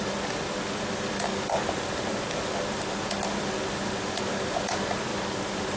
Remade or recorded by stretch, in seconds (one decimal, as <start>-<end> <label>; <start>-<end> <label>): 0.0-5.8 recorded